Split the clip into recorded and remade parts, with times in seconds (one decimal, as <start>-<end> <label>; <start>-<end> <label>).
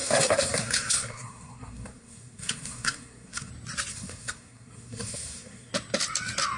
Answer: 0.0-3.5 remade; 3.5-3.9 recorded; 3.9-5.7 remade; 5.7-6.6 recorded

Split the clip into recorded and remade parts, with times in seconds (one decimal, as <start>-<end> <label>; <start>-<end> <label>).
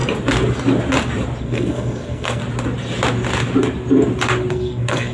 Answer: 0.0-1.4 recorded; 1.4-2.4 remade; 2.4-4.5 recorded; 4.5-5.1 remade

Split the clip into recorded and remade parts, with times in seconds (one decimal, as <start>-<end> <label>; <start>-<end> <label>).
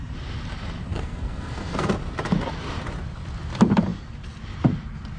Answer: 0.0-0.9 recorded; 0.9-1.9 remade; 1.9-5.2 recorded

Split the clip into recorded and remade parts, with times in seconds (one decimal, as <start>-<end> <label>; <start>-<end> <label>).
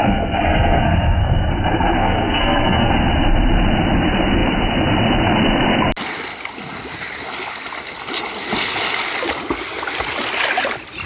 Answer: 0.0-1.5 remade; 1.5-2.0 recorded; 2.0-2.9 remade; 2.9-11.1 recorded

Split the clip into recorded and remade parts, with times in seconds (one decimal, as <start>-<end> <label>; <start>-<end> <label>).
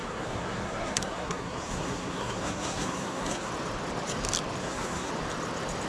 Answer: 0.0-3.5 remade; 3.5-4.6 recorded; 4.6-5.1 remade; 5.1-5.9 recorded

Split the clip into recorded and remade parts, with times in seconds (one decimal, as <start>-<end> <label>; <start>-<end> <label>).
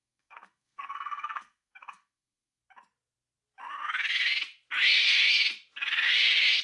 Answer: 0.0-2.6 remade; 2.6-6.6 recorded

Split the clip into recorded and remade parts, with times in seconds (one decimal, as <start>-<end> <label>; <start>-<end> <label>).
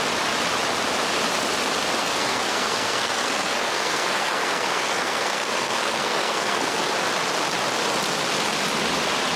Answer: 0.0-2.0 recorded; 2.0-6.8 remade; 6.8-9.4 recorded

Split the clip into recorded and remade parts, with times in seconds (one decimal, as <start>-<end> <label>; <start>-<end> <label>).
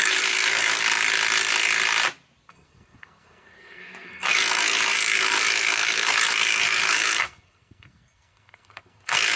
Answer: 0.0-0.8 remade; 0.8-2.5 recorded; 2.5-9.4 remade